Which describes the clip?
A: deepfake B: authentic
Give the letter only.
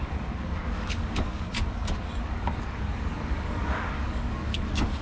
A